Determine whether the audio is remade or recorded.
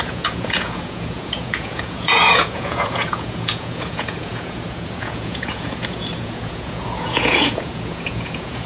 remade